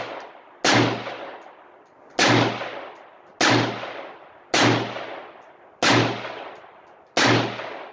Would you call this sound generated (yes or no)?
no